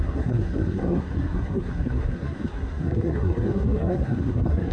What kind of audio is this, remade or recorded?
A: remade